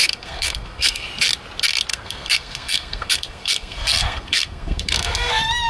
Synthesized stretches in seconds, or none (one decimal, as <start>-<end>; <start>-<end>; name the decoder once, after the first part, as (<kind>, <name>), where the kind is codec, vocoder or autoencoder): 0.0-1.1 (codec, SNAC); 1.9-5.3